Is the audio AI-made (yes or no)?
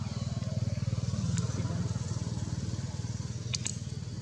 no